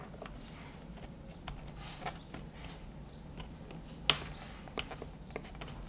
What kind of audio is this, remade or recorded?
recorded